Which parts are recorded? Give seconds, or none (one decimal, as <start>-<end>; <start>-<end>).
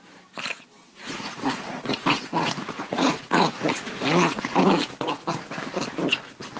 0.0-0.8; 4.8-6.6